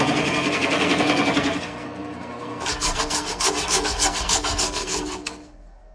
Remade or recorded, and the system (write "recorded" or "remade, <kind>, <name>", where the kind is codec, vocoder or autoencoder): remade, codec, SNAC